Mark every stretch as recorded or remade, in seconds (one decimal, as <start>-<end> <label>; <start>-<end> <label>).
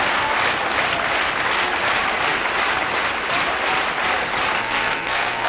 0.0-4.6 recorded; 4.6-5.5 remade